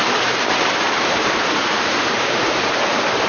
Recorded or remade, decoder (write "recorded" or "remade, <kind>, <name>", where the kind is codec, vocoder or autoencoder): remade, vocoder, BigVGAN v2